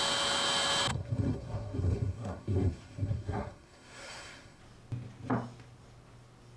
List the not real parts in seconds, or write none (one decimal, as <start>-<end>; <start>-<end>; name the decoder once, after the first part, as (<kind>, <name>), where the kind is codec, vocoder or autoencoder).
0.9-4.6 (codec, SNAC)